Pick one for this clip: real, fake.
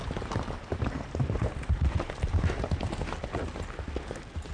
real